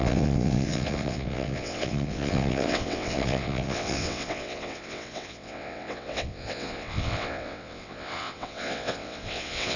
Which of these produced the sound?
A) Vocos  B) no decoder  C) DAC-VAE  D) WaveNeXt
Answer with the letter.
D